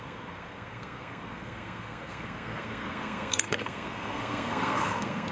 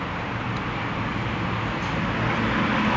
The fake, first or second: first